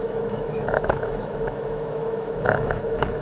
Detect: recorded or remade remade